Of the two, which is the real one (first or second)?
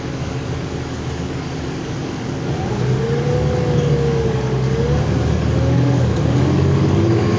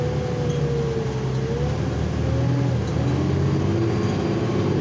second